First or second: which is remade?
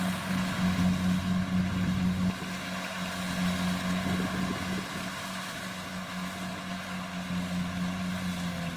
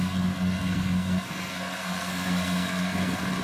second